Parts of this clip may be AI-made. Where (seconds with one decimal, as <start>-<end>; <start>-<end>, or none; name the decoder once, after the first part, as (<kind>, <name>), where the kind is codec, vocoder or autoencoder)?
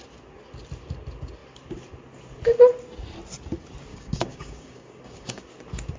3.9-5.5 (codec, DAC)